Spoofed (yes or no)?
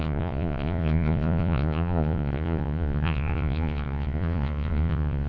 yes